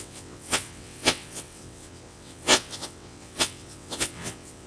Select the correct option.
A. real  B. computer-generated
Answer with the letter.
B